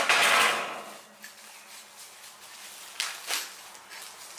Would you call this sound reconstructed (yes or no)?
no